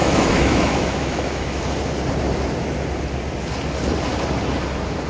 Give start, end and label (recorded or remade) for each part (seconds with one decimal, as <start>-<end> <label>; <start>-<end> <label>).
0.0-1.6 remade; 1.6-5.1 recorded